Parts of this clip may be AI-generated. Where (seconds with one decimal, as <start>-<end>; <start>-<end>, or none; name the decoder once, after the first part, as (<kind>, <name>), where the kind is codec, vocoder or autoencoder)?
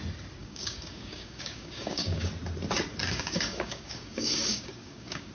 0.4-2.3 (codec, DAC); 3.0-5.3